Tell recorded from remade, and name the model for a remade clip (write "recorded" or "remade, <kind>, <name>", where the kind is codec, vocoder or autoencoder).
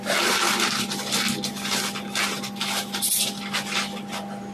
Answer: recorded